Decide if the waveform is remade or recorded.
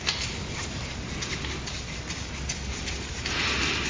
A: recorded